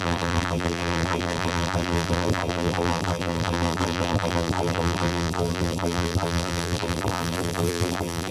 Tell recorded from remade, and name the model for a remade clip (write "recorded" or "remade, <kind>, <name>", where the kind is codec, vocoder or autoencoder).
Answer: remade, vocoder, BigVGAN v2